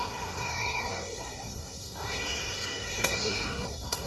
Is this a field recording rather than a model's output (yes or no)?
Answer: no